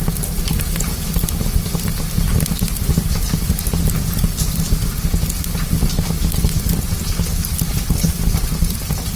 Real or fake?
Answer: real